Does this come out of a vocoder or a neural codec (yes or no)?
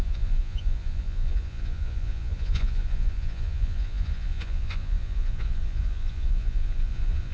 yes